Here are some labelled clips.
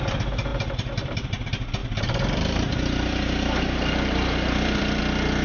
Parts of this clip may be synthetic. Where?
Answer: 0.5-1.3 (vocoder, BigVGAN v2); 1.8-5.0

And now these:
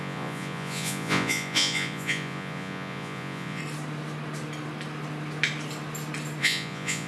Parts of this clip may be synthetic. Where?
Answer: 0.0-3.6 (vocoder, Vocos); 6.4-7.1

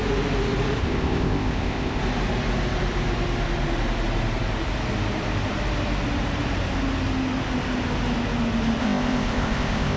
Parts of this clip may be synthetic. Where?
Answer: 0.8-2.0 (codec, ZipCodec); 8.8-10.0

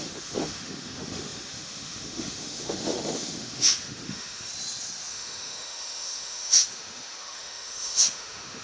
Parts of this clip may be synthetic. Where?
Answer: 0.0-4.5 (autoencoder, DAC-VAE); 5.1-8.6

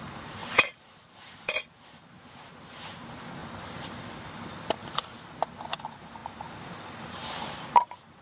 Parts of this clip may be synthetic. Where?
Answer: 0.0-3.4 (vocoder, BigVGAN v2); 5.7-6.2; 6.9-8.2

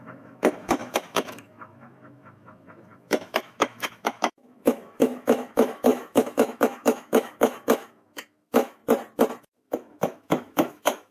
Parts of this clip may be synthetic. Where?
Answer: 0.0-8.8 (autoencoder, DAC-VAE); 9.4-11.1